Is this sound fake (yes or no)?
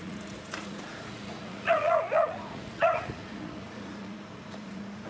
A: yes